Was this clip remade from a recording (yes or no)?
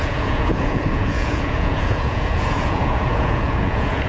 yes